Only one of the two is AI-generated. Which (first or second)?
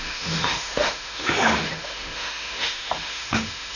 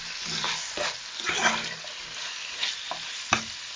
first